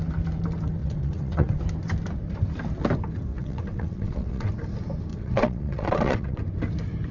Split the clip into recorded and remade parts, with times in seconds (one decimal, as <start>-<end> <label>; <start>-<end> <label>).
0.0-0.8 recorded; 0.8-1.6 remade; 1.6-3.3 recorded; 3.3-4.5 remade; 4.5-5.1 recorded; 5.1-6.4 remade; 6.4-7.1 recorded